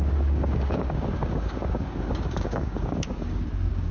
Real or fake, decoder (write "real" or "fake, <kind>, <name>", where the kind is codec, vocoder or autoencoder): fake, codec, DAC